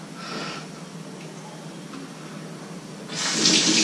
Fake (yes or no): no